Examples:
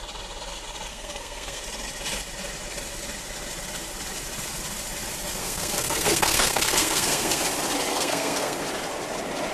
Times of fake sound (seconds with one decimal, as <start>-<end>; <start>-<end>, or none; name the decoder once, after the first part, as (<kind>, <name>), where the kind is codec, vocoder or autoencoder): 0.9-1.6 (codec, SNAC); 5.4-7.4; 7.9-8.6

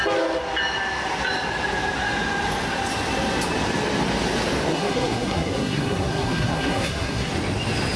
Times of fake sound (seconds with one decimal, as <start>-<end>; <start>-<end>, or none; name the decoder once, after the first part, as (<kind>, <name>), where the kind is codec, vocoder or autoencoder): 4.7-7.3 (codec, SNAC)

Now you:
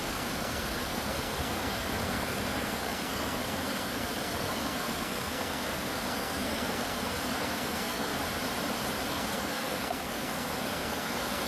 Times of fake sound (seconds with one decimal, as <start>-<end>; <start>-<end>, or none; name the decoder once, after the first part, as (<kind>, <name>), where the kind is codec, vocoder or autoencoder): 0.0-8.1 (codec, SNAC); 9.1-11.5

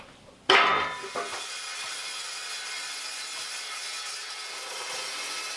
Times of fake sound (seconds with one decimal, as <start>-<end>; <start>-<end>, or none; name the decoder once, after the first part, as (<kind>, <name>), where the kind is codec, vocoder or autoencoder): none